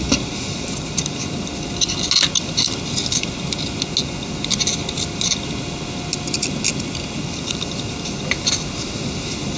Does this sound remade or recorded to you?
recorded